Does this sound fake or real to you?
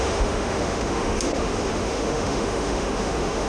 fake